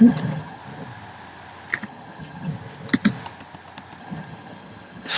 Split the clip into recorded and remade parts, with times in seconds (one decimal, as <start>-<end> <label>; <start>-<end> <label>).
0.0-0.6 remade; 0.6-1.8 recorded; 1.8-2.5 remade; 2.5-4.0 recorded; 4.0-5.2 remade